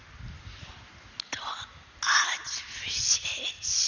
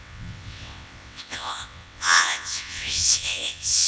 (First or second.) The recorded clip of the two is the first